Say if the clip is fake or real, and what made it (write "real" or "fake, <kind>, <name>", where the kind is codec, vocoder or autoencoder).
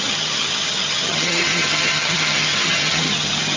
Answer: fake, vocoder, HiFi-GAN